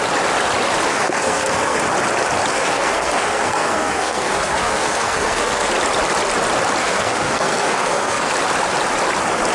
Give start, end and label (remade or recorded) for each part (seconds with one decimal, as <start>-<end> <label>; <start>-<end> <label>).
0.0-0.9 recorded; 0.9-1.8 remade; 1.8-2.5 recorded; 2.5-5.7 remade; 5.7-6.8 recorded; 6.8-8.3 remade; 8.3-9.5 recorded